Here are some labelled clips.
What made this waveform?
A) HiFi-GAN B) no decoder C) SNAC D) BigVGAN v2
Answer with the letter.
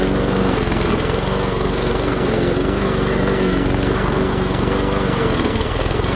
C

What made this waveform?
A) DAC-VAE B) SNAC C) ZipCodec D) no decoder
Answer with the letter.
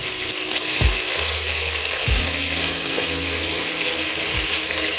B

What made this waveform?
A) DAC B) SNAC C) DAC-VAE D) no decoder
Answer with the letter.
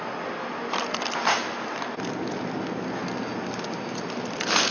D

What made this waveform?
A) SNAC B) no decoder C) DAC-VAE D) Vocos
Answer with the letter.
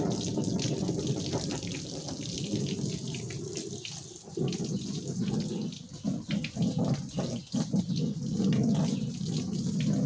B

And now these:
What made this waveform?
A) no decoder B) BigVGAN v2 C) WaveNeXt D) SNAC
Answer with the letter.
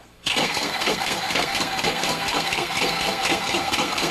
D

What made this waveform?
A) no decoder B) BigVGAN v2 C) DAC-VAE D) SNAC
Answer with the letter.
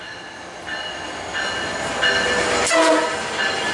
A